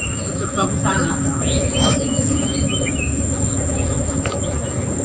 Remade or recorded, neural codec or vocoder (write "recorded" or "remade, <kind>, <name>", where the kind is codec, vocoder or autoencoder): remade, autoencoder, DAC-VAE